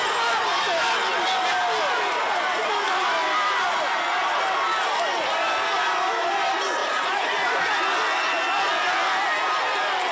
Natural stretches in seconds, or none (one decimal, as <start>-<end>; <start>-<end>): 0.0-6.8; 7.7-10.1